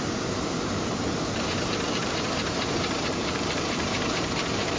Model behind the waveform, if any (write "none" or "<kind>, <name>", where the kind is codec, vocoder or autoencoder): vocoder, BigVGAN v2